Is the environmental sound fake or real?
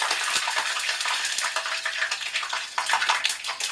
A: real